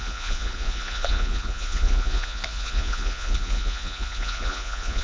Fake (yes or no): yes